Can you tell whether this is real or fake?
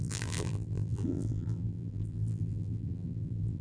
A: fake